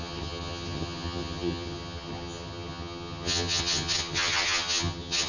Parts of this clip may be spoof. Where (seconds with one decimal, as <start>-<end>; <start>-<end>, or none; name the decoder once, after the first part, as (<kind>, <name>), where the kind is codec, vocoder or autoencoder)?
0.0-5.3 (vocoder, HiFi-GAN)

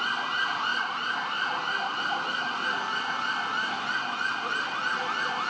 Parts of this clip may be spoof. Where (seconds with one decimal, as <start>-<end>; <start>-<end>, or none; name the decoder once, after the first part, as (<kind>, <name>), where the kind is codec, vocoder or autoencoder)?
none

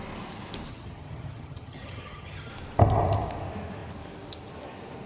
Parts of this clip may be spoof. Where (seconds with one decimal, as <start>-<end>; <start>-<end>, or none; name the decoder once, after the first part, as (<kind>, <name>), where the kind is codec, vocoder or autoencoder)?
0.7-2.5 (vocoder, HiFi-GAN)

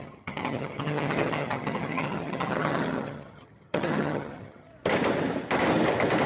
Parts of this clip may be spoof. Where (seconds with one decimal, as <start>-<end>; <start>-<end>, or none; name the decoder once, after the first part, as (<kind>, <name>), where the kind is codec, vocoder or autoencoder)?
0.0-4.7 (vocoder, HiFi-GAN)